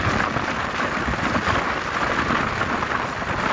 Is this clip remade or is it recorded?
recorded